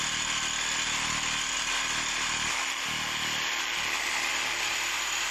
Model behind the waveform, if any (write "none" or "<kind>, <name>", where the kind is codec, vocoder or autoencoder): none